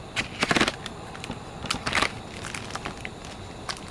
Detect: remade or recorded recorded